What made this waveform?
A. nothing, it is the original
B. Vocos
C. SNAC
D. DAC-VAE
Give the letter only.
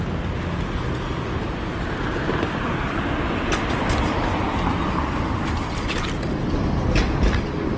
A